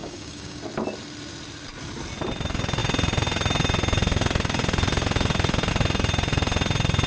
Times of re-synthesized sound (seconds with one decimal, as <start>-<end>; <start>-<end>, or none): 0.0-0.6